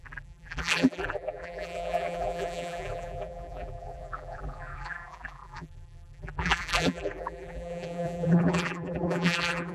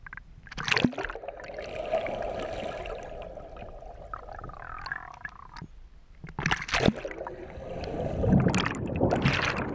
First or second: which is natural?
second